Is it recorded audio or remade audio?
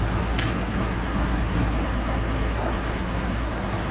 remade